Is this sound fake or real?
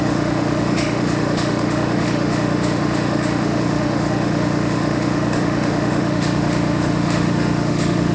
fake